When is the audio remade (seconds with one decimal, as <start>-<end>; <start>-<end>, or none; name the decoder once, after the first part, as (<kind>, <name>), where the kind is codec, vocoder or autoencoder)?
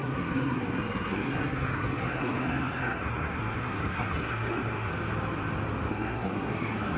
0.0-4.9 (codec, SNAC); 5.9-7.0